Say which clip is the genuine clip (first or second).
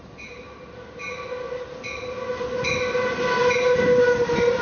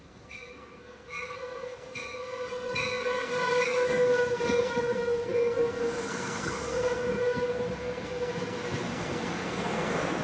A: first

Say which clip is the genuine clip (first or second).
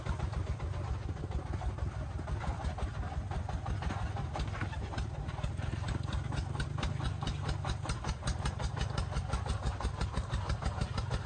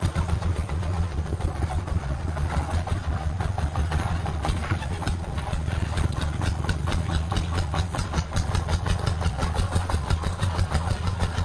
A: first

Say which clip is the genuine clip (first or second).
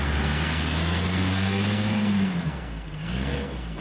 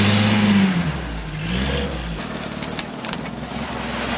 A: second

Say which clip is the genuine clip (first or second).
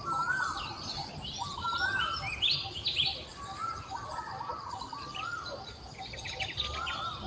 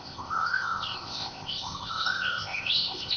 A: first